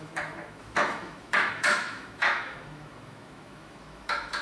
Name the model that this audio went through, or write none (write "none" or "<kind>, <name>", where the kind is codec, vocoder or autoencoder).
autoencoder, DAC-VAE